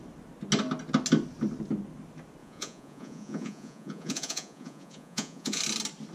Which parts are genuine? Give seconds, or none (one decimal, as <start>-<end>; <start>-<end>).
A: 0.0-2.4; 5.6-6.1